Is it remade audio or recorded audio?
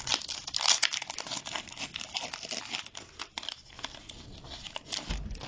recorded